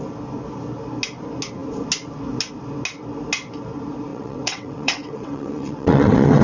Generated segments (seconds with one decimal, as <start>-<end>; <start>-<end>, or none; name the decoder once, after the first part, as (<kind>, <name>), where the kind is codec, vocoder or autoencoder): 4.1-6.4 (vocoder, WaveNeXt)